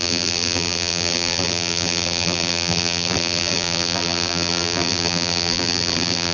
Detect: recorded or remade remade